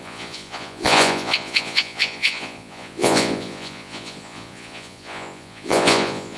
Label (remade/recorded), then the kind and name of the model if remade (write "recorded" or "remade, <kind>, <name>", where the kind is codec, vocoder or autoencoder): remade, vocoder, Vocos